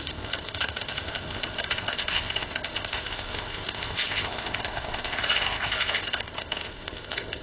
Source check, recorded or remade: remade